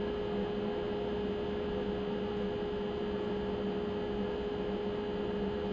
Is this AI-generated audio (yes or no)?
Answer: no